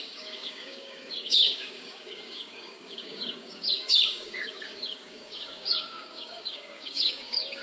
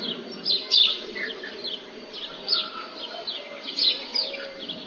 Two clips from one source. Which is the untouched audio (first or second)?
second